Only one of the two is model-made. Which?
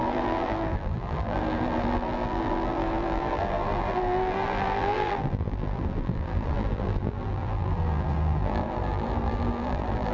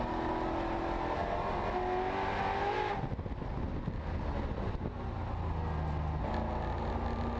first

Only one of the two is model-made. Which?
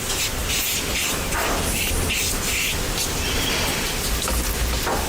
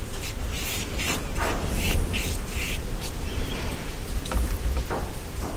second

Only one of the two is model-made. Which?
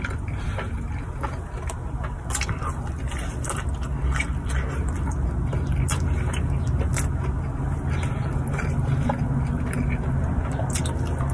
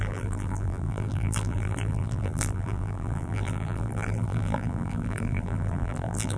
second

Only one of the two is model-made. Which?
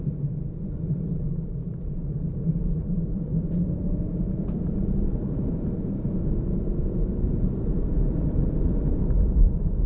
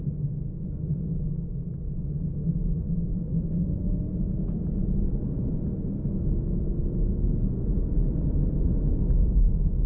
first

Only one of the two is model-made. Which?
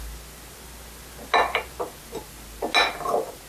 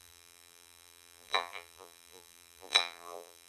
second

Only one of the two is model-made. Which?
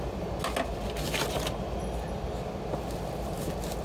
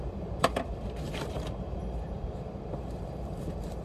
second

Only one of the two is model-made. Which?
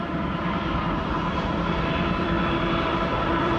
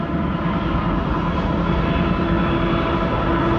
first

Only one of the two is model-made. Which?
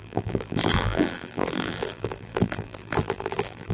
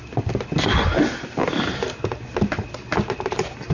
first